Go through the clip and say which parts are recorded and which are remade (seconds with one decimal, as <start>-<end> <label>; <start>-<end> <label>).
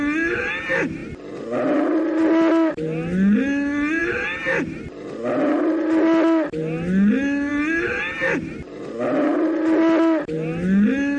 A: 0.0-11.2 recorded